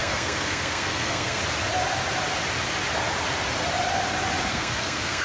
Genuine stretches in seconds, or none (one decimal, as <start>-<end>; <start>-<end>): 1.4-4.5